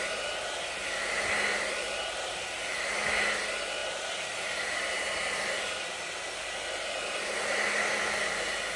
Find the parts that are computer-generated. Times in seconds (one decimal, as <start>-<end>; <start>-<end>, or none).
none